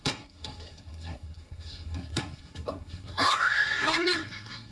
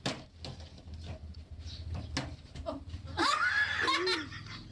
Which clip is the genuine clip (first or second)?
second